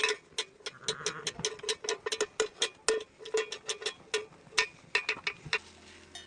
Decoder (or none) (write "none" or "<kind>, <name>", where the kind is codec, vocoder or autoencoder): none